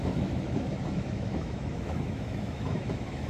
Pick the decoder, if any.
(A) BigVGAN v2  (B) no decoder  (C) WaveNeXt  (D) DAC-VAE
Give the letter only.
D